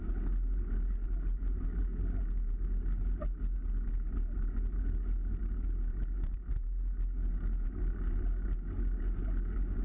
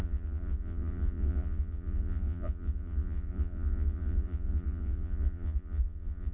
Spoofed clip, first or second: second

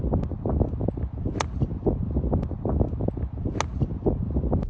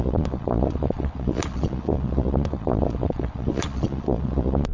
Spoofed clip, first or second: second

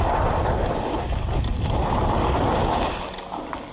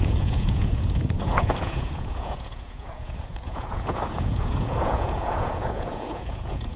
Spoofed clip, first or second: second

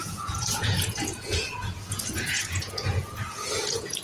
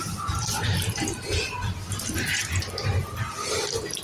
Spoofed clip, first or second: first